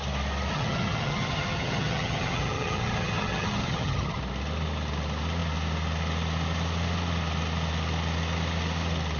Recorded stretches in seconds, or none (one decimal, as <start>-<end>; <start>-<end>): 0.0-0.5; 4.2-9.2